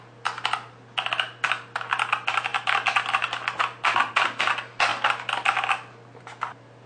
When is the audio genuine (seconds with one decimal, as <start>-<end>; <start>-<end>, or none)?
0.0-6.9